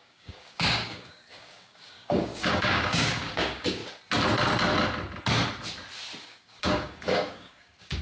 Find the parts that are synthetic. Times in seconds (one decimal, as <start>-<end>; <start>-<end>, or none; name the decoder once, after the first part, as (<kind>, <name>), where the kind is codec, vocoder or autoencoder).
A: 0.0-3.8 (codec, DAC); 6.2-8.0